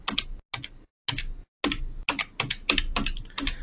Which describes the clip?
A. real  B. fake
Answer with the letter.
A